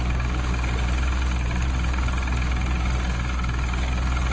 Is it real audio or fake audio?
real